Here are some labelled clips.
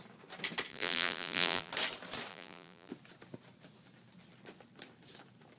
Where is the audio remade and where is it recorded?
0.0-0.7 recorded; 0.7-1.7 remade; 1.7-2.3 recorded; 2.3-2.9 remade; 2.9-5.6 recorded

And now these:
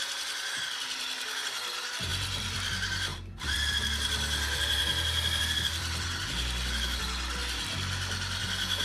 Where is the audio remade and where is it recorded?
0.0-2.1 recorded; 2.1-2.7 remade; 2.7-3.1 recorded; 3.1-7.0 remade; 7.0-8.8 recorded

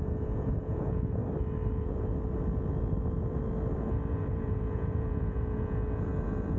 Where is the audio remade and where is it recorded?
0.0-1.2 remade; 1.2-4.1 recorded; 4.1-6.6 remade

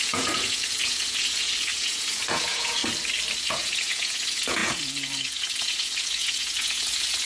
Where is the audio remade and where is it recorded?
0.0-2.8 remade; 2.8-3.4 recorded; 3.4-7.2 remade

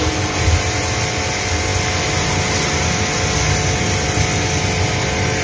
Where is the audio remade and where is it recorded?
0.0-5.4 recorded